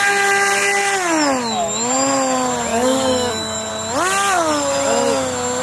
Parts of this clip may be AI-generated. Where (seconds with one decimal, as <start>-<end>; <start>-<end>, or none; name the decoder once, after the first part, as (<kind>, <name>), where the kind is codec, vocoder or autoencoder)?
2.7-3.7 (codec, DAC)

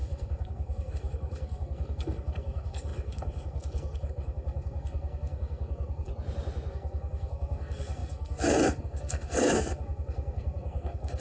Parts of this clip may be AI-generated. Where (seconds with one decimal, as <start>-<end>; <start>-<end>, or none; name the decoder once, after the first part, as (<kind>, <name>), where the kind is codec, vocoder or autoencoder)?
0.0-6.1 (codec, SNAC); 6.7-11.2

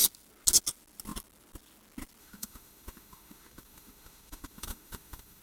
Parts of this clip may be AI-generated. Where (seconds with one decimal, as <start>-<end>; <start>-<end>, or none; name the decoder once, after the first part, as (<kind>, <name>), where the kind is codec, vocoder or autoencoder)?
2.2-5.4 (autoencoder, DAC-VAE)

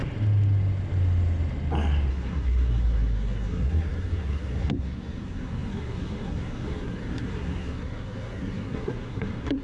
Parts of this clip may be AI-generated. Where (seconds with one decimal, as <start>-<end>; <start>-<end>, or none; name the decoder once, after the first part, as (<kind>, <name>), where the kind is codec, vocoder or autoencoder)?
2.1-9.6 (codec, SNAC)

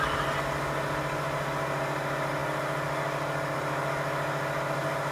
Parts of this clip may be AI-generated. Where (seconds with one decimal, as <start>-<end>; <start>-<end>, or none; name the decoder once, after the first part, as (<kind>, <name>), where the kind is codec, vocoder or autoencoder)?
none

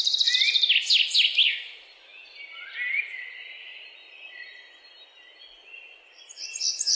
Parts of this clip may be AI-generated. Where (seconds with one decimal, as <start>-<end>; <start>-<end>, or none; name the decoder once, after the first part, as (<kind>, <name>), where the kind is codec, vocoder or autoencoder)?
none

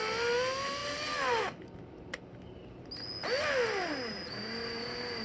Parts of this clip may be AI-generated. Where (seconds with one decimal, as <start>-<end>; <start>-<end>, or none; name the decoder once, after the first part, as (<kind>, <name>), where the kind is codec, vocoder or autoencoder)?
none

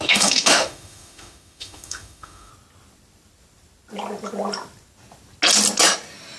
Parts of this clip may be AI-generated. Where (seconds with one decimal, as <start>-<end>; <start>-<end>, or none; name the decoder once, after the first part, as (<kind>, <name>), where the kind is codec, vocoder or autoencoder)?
0.0-2.5 (autoencoder, DAC-VAE)